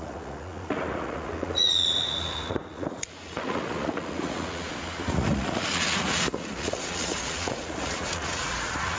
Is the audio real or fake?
fake